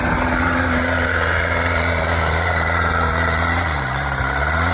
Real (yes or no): yes